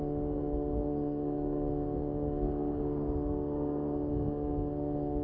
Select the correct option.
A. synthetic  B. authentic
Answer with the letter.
A